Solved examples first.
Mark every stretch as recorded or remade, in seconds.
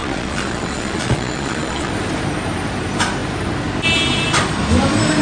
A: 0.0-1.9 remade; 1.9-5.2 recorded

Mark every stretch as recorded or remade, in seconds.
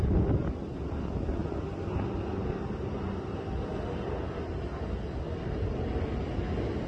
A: 0.0-6.9 recorded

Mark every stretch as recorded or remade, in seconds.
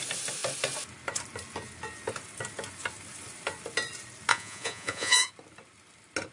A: 0.0-4.3 recorded; 4.3-5.3 remade; 5.3-6.3 recorded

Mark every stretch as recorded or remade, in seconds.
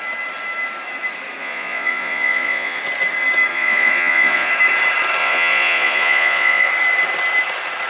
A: 0.0-1.4 recorded; 1.4-2.8 remade; 2.8-3.5 recorded; 3.5-4.5 remade; 4.5-5.2 recorded; 5.2-6.7 remade; 6.7-7.9 recorded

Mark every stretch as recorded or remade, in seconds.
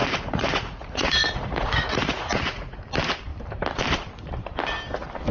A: 0.0-2.8 remade; 2.8-5.3 recorded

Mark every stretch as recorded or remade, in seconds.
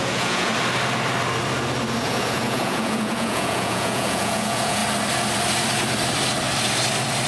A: 0.0-0.5 remade; 0.5-2.0 recorded; 2.0-4.8 remade; 4.8-7.3 recorded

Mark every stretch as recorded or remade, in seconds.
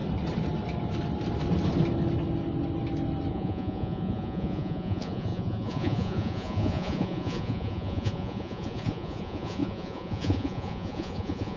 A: 0.0-3.3 recorded; 3.3-11.6 remade